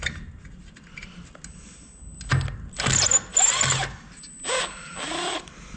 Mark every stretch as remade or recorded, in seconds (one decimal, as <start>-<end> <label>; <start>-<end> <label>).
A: 0.0-5.8 recorded